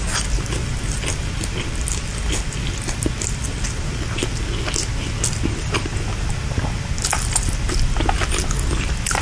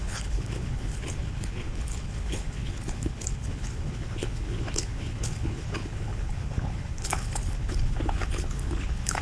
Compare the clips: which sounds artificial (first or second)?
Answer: second